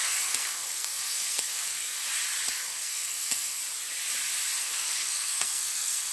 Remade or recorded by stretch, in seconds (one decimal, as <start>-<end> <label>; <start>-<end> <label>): 0.0-2.0 remade; 2.0-2.5 recorded; 2.5-3.6 remade; 3.6-4.6 recorded; 4.6-6.1 remade